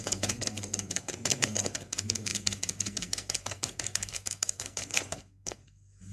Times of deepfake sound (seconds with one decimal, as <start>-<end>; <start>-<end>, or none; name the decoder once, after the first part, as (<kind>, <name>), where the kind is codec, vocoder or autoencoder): 0.0-6.1 (codec, SNAC)